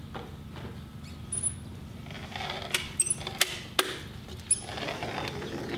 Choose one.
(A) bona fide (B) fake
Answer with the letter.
A